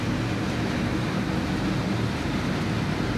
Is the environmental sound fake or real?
real